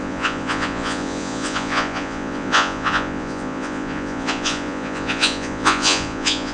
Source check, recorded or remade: remade